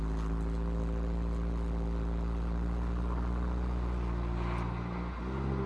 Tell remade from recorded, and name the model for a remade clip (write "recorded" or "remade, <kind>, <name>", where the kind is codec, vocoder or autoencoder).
recorded